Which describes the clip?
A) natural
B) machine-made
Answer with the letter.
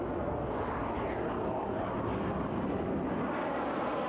A